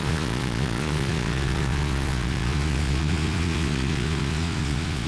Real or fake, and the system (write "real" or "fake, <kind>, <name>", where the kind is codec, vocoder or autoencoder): fake, vocoder, Vocos